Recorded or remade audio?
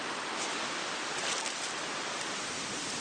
recorded